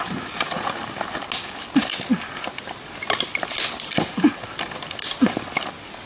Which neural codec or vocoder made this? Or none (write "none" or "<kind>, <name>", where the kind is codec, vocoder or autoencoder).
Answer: none